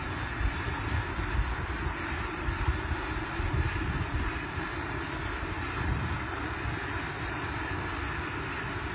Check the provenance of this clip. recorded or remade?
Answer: recorded